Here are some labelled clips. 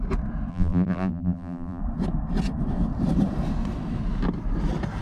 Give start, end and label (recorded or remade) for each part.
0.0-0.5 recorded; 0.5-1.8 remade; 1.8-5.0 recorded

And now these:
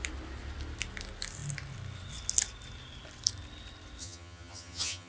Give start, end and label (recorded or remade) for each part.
0.0-4.0 recorded; 4.0-5.1 remade

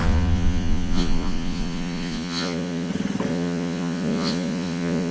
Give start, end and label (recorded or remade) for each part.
0.0-2.9 remade; 2.9-3.3 recorded; 3.3-5.1 remade

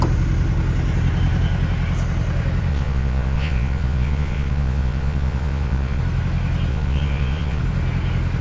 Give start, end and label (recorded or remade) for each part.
0.0-2.7 recorded; 2.7-6.0 remade; 6.0-6.7 recorded; 6.7-7.6 remade; 7.6-8.4 recorded

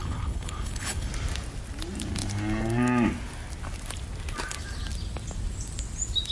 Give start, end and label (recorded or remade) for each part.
0.0-1.1 remade; 1.1-6.3 recorded

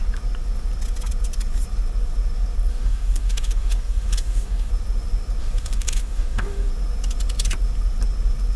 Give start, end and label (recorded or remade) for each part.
0.0-2.7 recorded; 2.7-4.7 remade; 4.7-5.4 recorded; 5.4-6.7 remade; 6.7-8.6 recorded